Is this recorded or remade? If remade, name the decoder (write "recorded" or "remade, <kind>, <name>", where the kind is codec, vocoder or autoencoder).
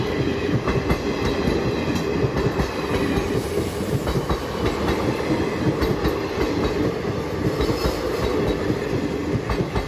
recorded